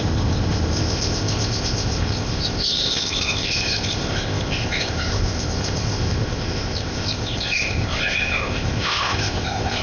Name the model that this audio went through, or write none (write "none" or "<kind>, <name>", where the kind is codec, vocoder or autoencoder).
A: codec, ZipCodec